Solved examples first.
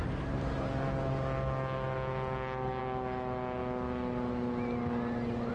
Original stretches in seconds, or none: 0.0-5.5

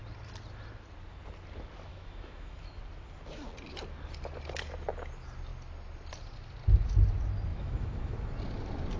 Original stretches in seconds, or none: 0.0-1.9; 2.8-7.5; 8.1-9.0

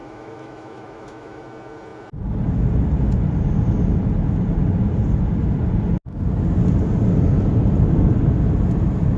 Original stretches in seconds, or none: 1.4-9.2

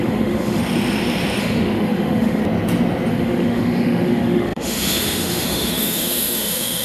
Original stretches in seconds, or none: 0.6-1.4; 2.4-3.1

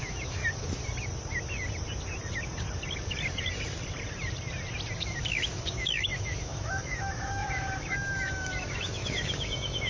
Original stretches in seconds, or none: 0.4-5.0